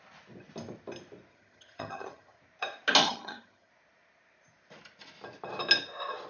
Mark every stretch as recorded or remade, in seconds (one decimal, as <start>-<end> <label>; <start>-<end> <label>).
0.0-1.3 recorded; 1.3-2.4 remade; 2.4-3.0 recorded; 3.0-3.7 remade; 3.7-6.3 recorded